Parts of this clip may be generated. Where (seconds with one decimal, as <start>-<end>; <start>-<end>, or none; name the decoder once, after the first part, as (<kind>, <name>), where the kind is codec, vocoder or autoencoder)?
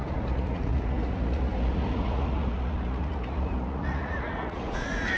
0.0-5.2 (vocoder, Vocos)